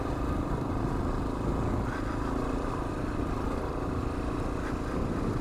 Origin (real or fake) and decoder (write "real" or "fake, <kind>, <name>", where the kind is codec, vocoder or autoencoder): real